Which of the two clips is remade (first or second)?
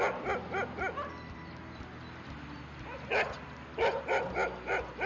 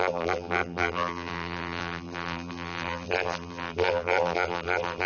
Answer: second